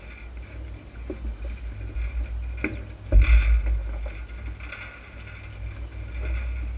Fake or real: real